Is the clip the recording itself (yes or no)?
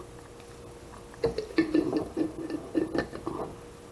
yes